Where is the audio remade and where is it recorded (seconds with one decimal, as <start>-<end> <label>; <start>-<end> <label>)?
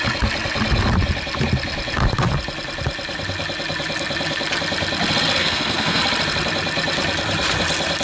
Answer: 0.0-5.4 recorded; 5.4-6.0 remade; 6.0-8.0 recorded